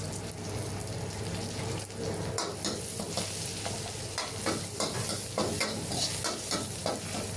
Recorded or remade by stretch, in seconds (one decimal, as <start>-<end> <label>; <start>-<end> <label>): 0.0-7.4 recorded